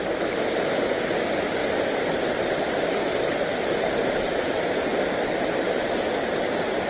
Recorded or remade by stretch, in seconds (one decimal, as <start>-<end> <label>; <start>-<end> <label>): 0.0-6.9 recorded